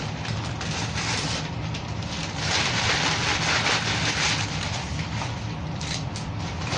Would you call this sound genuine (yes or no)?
no